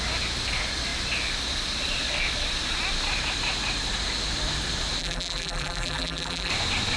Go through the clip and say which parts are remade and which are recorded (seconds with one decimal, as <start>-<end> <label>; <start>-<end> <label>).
0.0-5.0 recorded; 5.0-6.5 remade; 6.5-7.0 recorded